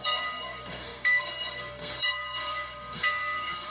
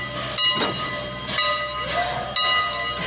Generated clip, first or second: first